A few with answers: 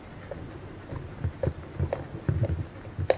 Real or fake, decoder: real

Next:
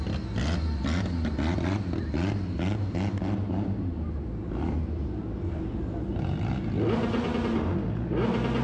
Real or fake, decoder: real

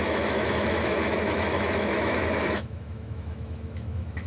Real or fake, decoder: fake, autoencoder, DAC-VAE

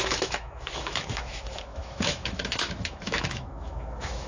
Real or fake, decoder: fake, autoencoder, DAC-VAE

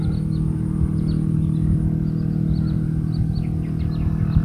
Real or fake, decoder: real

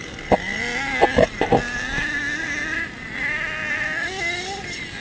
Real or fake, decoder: real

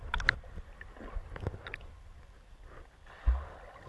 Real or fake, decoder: real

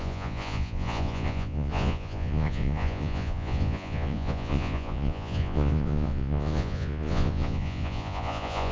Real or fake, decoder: fake, vocoder, Vocos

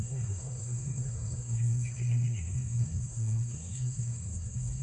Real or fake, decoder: fake, codec, SNAC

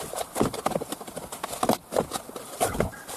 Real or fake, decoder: real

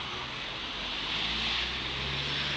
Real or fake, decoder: real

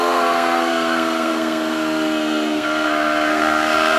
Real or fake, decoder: fake, codec, SNAC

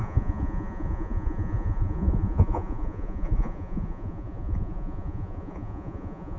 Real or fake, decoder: fake, vocoder, Vocos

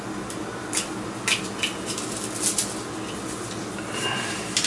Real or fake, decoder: real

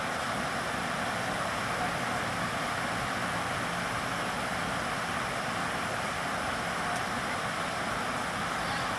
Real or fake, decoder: real